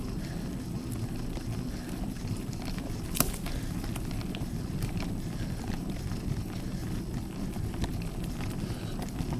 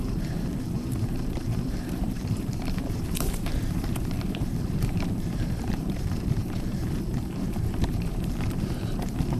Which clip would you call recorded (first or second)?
first